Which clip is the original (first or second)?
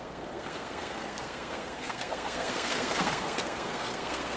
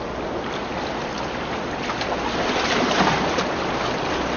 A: second